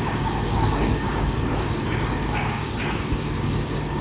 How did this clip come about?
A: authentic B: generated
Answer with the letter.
B